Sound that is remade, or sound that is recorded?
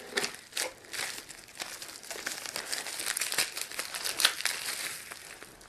recorded